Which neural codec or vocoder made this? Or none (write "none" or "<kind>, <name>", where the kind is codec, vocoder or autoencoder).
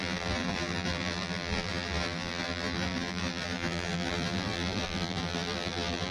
vocoder, BigVGAN v2